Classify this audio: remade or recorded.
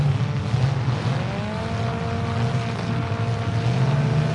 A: recorded